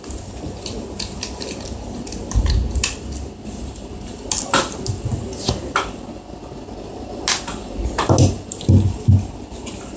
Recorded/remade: recorded